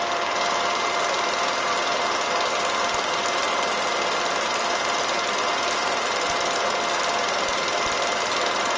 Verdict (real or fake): real